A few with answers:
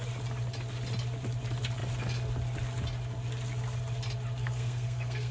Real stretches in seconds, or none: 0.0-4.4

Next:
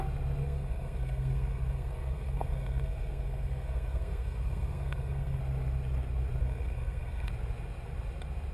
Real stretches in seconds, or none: 0.0-0.4; 5.4-6.4; 7.3-8.5

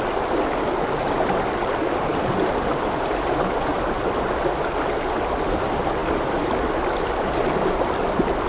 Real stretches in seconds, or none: 0.0-8.5

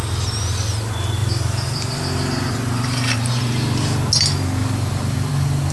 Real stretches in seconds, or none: 0.0-1.2; 4.1-4.6; 5.3-5.7

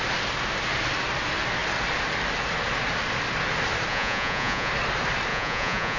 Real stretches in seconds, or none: 0.0-3.9; 4.7-5.3

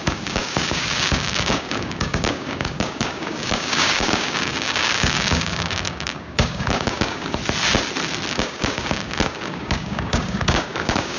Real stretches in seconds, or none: 7.4-8.3